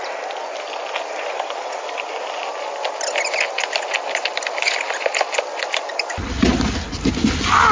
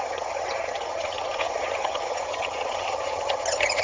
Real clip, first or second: first